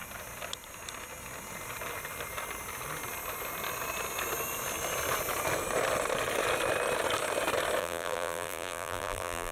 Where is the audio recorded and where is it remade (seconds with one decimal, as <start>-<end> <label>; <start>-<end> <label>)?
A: 0.0-7.8 recorded; 7.8-9.5 remade